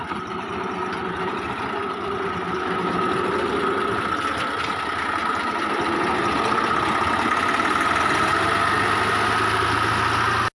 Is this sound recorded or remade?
recorded